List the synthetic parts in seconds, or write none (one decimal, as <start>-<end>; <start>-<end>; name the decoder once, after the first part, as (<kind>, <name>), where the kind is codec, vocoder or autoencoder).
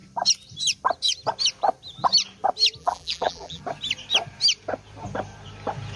2.8-3.6 (vocoder, BigVGAN v2)